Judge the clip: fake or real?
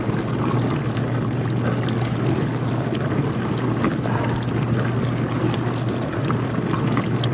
real